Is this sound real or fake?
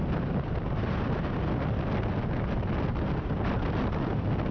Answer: real